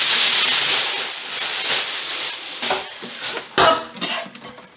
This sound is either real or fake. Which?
real